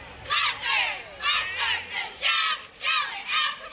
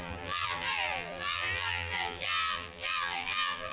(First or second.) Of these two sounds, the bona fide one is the first